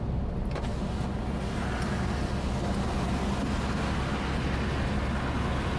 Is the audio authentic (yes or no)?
yes